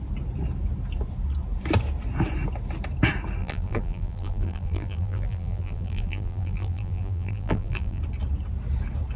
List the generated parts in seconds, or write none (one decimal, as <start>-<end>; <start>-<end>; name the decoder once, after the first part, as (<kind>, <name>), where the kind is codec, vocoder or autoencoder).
3.4-8.0 (vocoder, BigVGAN v2)